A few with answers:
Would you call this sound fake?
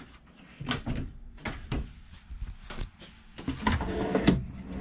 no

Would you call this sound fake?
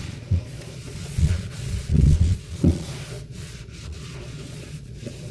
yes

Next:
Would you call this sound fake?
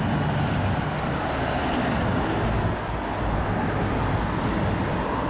no